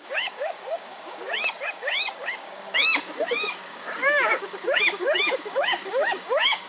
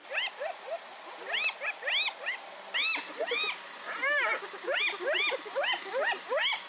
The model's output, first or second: first